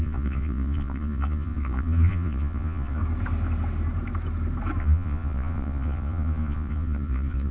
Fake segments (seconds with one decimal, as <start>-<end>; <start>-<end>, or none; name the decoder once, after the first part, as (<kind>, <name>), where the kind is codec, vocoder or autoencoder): 0.0-3.0 (vocoder, Vocos); 4.8-7.5